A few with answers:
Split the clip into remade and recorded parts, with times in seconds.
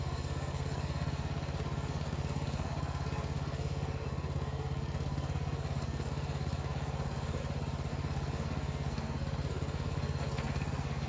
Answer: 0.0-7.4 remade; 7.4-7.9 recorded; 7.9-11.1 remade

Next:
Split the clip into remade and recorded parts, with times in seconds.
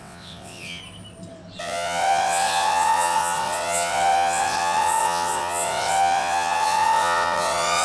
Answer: 0.0-0.8 remade; 0.8-1.6 recorded; 1.6-7.8 remade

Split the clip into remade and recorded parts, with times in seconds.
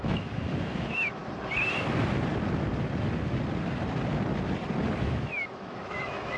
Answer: 0.0-1.2 remade; 1.2-5.0 recorded; 5.0-6.4 remade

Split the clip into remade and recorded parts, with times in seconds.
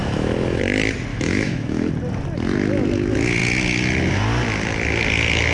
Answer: 0.0-0.6 remade; 0.6-1.1 recorded; 1.1-1.9 remade; 1.9-5.5 recorded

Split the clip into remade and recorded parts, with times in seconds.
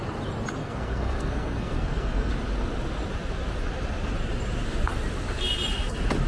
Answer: 0.0-0.6 recorded; 0.6-2.3 remade; 2.3-6.3 recorded